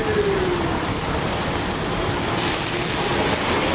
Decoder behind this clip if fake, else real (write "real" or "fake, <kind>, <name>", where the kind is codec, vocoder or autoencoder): real